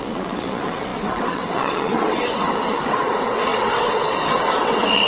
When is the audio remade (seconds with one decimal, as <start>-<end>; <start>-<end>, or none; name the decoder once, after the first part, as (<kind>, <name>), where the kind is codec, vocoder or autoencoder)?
0.0-5.1 (vocoder, WaveNeXt)